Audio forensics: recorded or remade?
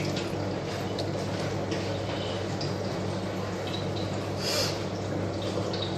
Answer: recorded